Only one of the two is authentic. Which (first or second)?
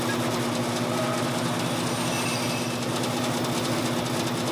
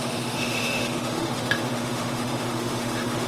first